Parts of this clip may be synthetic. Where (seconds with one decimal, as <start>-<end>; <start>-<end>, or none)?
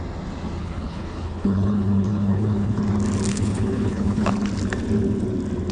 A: 0.6-2.8; 3.3-4.3